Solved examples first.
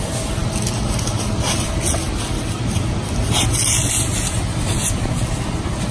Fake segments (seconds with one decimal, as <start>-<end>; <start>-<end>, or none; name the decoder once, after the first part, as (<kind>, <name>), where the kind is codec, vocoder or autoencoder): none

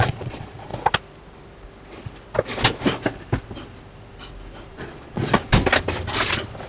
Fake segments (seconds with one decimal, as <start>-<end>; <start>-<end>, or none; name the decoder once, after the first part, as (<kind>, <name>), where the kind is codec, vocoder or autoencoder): 0.0-0.7 (vocoder, Vocos); 4.7-5.4

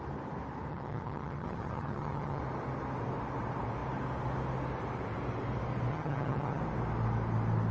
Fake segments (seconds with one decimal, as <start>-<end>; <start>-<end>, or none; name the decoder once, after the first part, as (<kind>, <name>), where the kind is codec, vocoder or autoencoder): 0.7-2.4 (vocoder, HiFi-GAN); 5.9-6.6

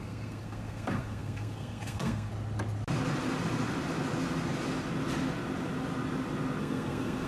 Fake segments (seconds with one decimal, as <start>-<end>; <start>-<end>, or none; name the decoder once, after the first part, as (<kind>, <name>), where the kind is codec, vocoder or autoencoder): 0.0-2.3 (codec, SNAC); 6.6-7.3